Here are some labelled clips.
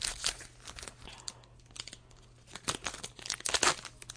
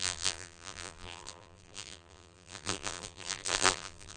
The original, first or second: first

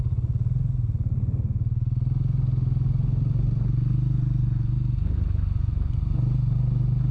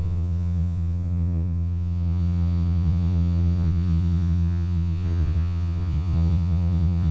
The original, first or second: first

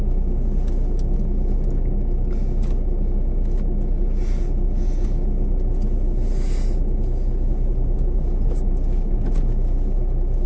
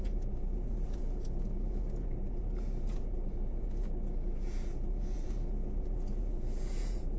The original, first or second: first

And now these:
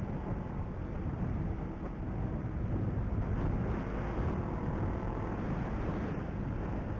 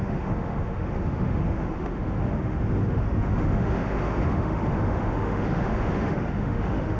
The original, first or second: first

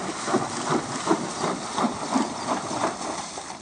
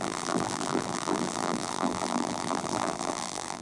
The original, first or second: first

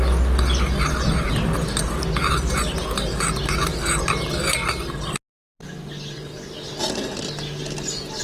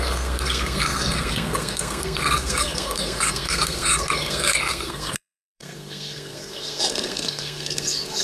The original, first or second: first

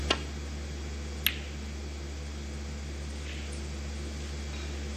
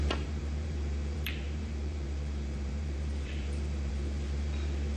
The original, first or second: first